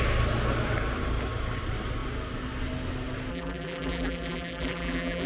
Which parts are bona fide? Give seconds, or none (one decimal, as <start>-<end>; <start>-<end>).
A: 0.0-3.3